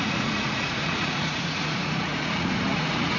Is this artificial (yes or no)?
yes